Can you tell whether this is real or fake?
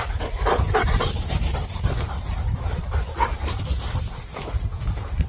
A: real